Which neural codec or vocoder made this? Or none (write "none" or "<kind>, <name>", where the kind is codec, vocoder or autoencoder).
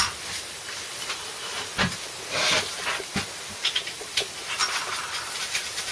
none